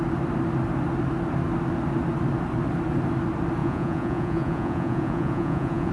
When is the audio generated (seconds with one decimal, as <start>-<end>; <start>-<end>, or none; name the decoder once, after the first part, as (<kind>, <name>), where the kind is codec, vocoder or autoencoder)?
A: 3.6-5.9 (vocoder, Vocos)